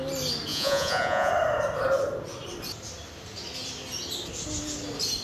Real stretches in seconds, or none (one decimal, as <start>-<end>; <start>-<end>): 0.0-0.5; 1.3-5.2